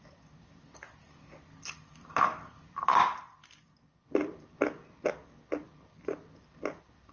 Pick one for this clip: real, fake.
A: real